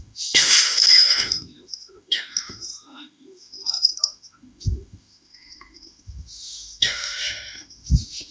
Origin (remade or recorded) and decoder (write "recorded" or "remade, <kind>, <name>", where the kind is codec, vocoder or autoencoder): remade, autoencoder, DAC-VAE